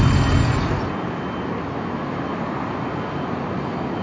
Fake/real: real